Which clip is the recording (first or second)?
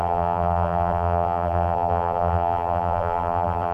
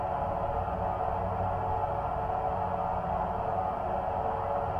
second